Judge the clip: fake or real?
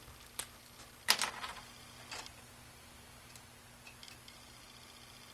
real